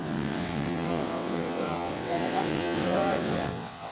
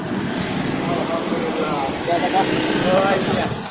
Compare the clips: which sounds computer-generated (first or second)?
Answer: first